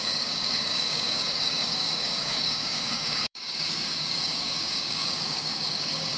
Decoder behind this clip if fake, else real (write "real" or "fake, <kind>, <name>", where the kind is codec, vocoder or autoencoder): fake, codec, DAC